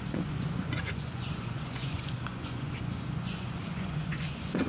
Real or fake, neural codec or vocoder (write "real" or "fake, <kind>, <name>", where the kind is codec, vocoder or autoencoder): fake, vocoder, Vocos